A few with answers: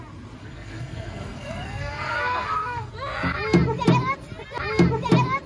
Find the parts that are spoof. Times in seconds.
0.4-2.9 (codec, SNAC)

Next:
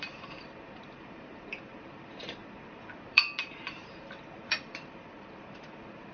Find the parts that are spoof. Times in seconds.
0.0-6.1 (vocoder, BigVGAN v2)

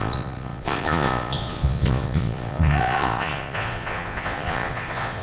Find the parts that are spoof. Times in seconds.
0.0-5.2 (vocoder, Vocos)

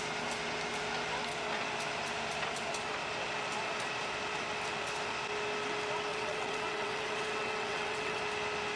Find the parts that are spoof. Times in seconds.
6.1-8.2 (vocoder, WaveNeXt)

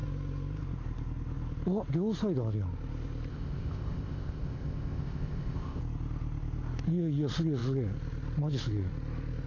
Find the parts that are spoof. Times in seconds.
3.3-5.8 (codec, ZipCodec)

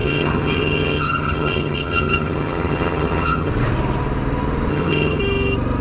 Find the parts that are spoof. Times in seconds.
0.0-3.5 (vocoder, HiFi-GAN); 4.7-5.2

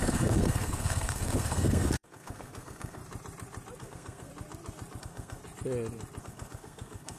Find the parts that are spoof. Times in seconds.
0.0-3.0 (codec, SNAC); 3.8-4.3; 5.0-5.4; 6.2-7.2